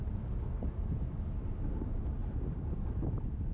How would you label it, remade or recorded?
recorded